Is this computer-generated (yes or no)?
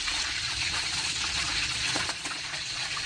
yes